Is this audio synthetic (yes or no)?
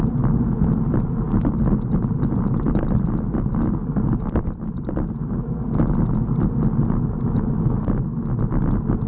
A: no